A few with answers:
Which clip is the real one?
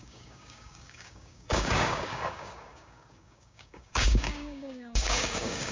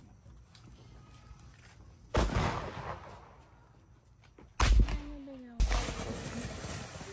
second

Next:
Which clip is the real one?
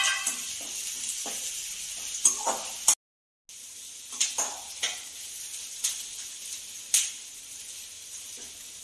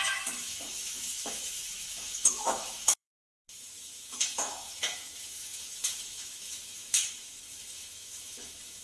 first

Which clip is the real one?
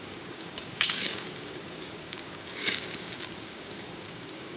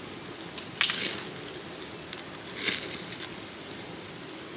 second